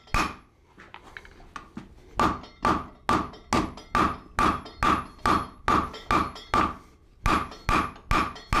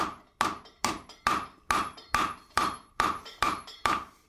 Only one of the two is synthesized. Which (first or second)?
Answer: second